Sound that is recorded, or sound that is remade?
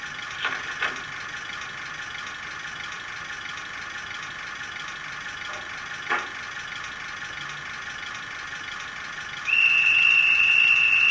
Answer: recorded